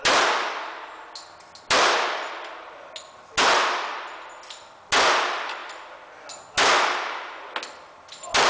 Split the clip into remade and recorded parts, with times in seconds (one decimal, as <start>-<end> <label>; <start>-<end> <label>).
0.0-8.5 recorded